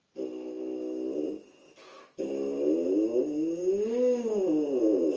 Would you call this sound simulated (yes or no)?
no